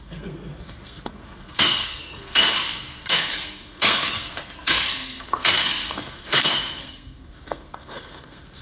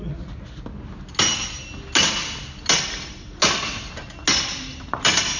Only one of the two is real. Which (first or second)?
second